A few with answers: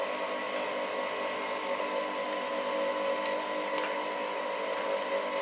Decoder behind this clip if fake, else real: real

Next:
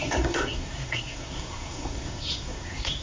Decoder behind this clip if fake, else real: fake, codec, SNAC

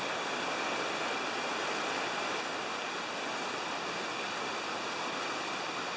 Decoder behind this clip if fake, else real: real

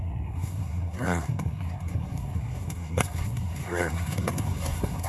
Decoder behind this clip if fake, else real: fake, codec, SNAC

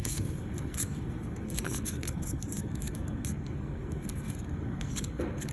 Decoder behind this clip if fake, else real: fake, codec, SNAC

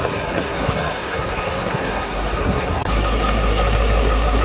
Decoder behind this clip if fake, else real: fake, codec, SNAC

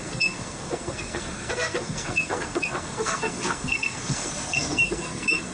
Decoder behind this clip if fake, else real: fake, codec, SNAC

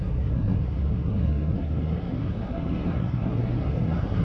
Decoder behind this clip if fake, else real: fake, codec, SNAC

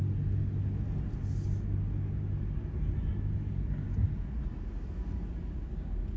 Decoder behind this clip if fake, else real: real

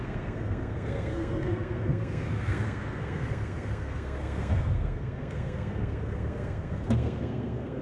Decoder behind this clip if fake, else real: fake, codec, SNAC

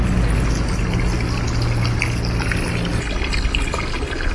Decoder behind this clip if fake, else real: real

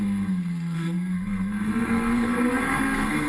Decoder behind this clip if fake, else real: fake, codec, SNAC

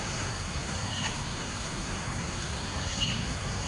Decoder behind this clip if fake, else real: fake, codec, SNAC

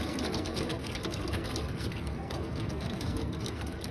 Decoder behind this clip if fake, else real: fake, codec, SNAC